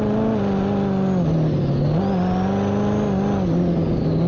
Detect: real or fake real